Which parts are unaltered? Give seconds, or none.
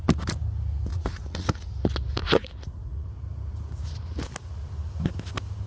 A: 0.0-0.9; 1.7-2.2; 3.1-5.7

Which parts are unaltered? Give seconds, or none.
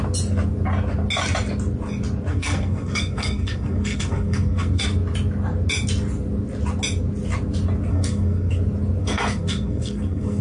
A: 0.0-2.3; 4.8-7.9; 8.5-9.0